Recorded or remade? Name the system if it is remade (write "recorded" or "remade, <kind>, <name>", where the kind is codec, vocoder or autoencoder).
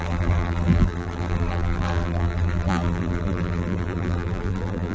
remade, vocoder, BigVGAN v2